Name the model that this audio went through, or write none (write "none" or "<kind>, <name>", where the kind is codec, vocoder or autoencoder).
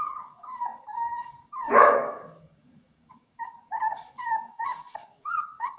codec, DAC